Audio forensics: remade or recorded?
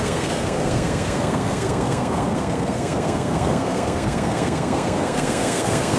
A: remade